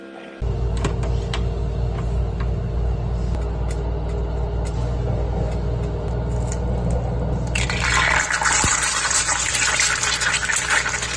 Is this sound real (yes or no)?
yes